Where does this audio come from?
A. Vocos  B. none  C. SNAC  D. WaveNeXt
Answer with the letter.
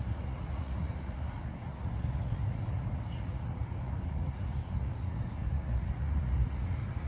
A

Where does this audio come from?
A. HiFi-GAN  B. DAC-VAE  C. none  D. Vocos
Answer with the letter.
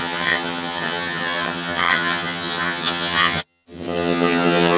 A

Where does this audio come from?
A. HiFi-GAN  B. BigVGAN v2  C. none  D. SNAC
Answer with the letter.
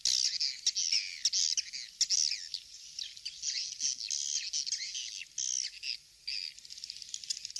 C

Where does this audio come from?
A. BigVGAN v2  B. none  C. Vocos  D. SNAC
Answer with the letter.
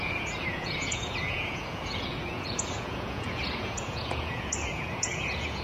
C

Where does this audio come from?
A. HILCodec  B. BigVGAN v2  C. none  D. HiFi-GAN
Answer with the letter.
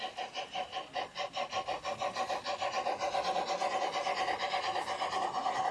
C